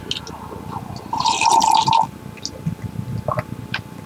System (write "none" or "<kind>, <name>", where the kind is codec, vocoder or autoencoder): none